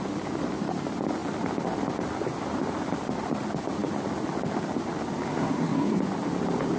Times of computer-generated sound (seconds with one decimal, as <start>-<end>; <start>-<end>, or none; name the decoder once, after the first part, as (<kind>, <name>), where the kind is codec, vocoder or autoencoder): 5.3-6.0 (codec, SNAC)